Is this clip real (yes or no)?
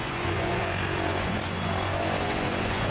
no